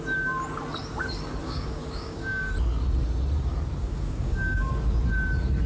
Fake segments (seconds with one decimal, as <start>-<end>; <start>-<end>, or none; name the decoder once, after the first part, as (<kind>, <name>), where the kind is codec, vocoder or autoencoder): 1.4-2.5 (codec, DAC); 3.8-4.7